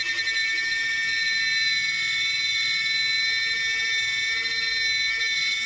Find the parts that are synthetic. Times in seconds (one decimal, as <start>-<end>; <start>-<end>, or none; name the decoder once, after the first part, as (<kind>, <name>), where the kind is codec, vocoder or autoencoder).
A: none